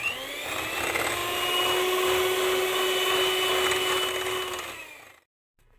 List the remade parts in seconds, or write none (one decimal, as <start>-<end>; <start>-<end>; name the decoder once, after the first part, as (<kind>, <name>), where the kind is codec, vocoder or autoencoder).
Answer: none